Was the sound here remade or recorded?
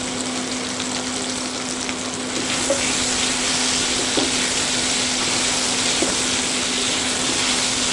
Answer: recorded